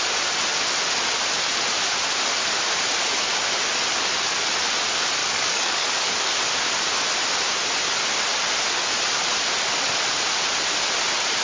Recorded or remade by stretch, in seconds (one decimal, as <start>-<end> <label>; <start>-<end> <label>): 0.0-5.2 recorded; 5.2-6.3 remade; 6.3-11.4 recorded